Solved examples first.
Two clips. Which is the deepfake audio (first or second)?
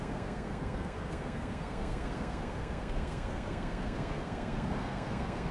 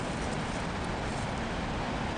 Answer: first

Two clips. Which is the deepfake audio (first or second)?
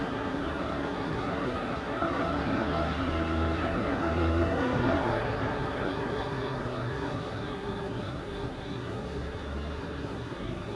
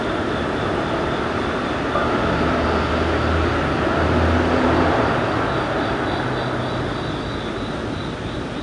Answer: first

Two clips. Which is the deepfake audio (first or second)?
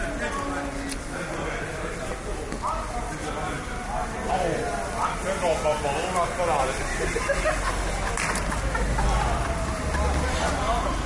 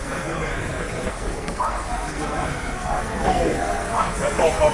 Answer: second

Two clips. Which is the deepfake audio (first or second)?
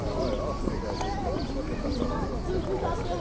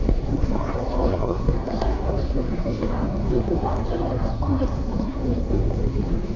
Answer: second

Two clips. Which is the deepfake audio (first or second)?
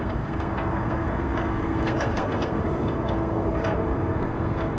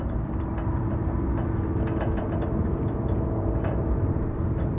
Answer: first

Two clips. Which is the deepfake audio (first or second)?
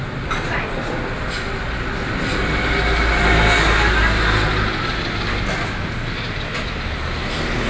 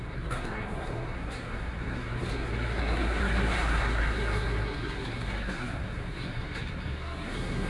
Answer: second